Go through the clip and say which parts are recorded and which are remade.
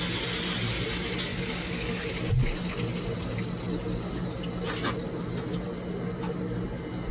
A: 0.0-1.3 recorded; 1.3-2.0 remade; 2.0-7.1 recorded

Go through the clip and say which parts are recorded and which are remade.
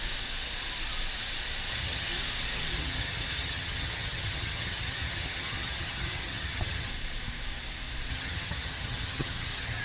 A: 0.0-1.7 recorded; 1.7-2.1 remade; 2.1-2.8 recorded; 2.8-6.9 remade; 6.9-8.1 recorded; 8.1-9.8 remade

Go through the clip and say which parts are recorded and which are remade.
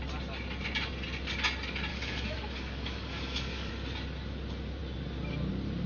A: 0.0-1.9 recorded; 1.9-3.7 remade; 3.7-5.9 recorded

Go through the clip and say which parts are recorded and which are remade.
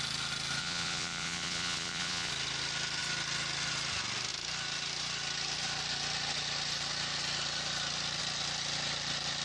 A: 0.0-0.6 recorded; 0.6-2.3 remade; 2.3-9.4 recorded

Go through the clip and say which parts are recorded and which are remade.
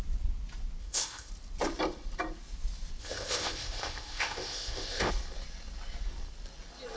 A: 0.0-0.8 recorded; 0.8-1.3 remade; 1.3-3.0 recorded; 3.0-5.1 remade; 5.1-7.0 recorded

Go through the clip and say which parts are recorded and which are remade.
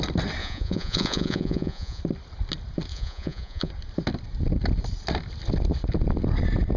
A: 0.0-0.4 recorded; 0.4-2.0 remade; 2.0-2.9 recorded; 2.9-3.7 remade; 3.7-6.8 recorded